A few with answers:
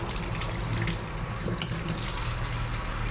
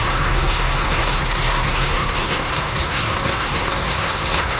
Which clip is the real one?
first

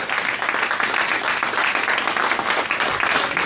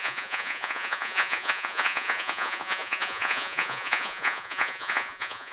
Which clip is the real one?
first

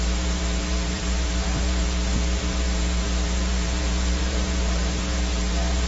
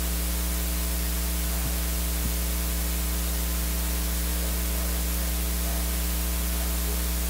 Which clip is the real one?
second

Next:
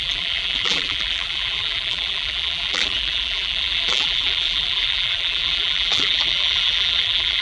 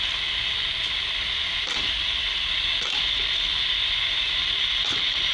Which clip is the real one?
second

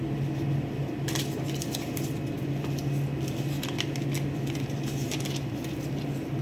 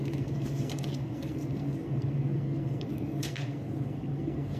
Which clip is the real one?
first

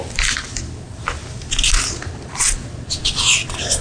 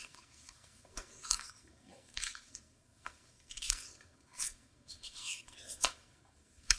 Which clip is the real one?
first